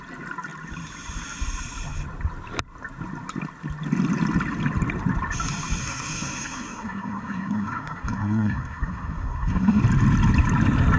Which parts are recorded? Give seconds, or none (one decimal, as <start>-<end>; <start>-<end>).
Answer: 0.0-5.8; 9.8-11.0